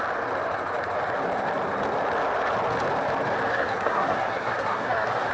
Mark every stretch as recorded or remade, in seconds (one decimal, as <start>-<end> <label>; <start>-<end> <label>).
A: 0.0-3.5 recorded; 3.5-5.3 remade